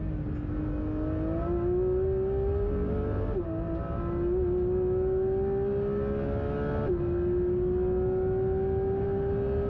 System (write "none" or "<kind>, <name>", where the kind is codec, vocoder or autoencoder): none